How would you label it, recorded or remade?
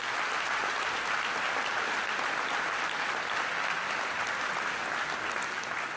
recorded